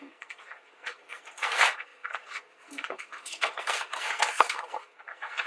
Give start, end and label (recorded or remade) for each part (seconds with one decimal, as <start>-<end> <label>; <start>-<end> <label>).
0.0-5.5 remade